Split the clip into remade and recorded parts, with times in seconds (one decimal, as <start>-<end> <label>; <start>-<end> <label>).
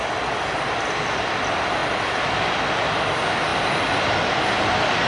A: 0.0-5.1 recorded